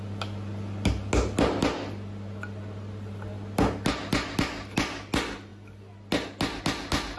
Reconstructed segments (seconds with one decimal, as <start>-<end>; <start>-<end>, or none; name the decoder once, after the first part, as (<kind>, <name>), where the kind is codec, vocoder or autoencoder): none